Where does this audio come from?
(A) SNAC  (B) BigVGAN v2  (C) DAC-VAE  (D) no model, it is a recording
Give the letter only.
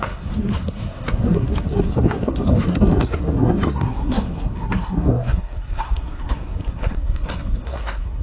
A